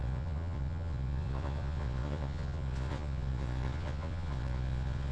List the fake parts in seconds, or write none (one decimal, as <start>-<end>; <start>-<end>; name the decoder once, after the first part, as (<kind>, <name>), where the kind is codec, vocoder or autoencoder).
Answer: 0.0-5.1 (vocoder, Vocos)